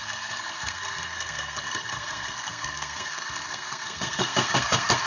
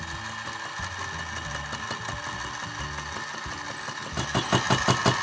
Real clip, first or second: second